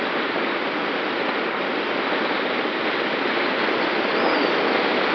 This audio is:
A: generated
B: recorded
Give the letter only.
B